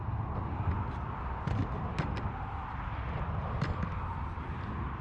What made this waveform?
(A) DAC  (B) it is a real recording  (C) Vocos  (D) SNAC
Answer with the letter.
B